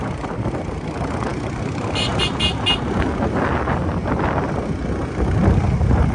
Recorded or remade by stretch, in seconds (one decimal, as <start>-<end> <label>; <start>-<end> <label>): 0.0-6.1 recorded